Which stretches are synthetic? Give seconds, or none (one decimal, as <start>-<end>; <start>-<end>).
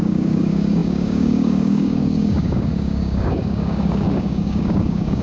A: 0.0-5.2